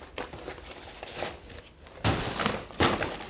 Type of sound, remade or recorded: recorded